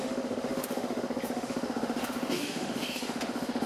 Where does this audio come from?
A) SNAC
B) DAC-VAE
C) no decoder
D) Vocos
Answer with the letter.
B